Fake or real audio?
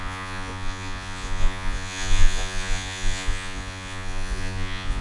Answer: fake